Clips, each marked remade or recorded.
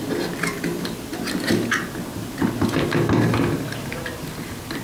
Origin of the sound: recorded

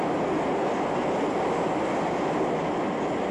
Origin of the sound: recorded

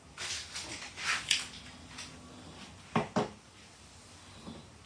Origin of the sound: recorded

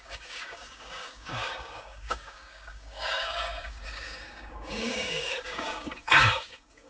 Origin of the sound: remade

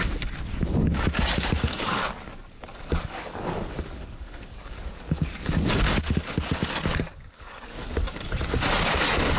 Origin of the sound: remade